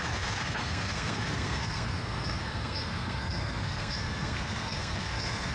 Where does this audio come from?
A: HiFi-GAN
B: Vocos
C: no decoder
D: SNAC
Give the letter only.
D